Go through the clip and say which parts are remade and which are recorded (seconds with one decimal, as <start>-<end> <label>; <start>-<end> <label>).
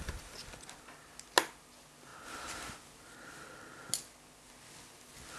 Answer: 0.0-5.4 recorded